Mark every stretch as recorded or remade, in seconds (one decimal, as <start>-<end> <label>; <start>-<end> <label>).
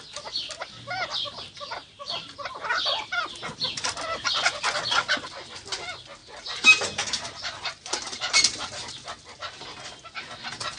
0.0-1.8 recorded; 1.8-3.2 remade; 3.2-6.2 recorded; 6.2-8.9 remade; 8.9-10.8 recorded